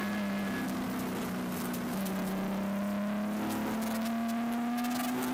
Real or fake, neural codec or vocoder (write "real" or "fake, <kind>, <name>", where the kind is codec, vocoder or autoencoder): real